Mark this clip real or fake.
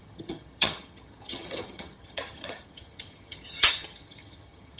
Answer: fake